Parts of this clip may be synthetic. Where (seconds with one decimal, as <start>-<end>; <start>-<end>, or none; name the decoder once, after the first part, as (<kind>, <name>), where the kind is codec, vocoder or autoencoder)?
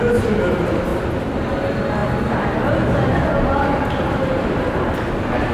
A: none